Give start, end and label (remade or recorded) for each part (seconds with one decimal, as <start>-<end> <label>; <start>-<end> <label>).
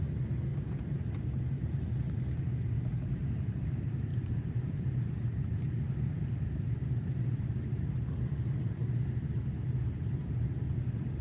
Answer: 0.0-0.5 recorded; 0.5-1.9 remade; 1.9-4.1 recorded; 4.1-7.8 remade; 7.8-11.2 recorded